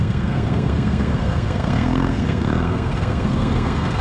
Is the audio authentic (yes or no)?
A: no